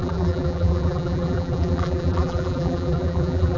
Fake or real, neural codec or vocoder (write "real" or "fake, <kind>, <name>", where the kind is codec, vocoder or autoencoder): fake, vocoder, BigVGAN v2